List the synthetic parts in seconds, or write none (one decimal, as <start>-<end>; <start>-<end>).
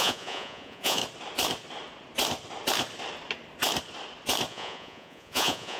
0.0-1.0; 4.5-5.8